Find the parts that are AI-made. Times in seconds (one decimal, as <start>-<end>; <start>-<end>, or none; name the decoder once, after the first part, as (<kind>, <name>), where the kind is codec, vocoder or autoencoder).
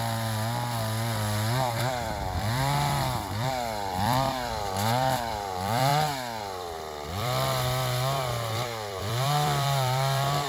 0.0-5.9 (vocoder, BigVGAN v2); 6.4-10.5